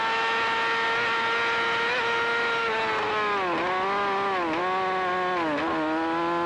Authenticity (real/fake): real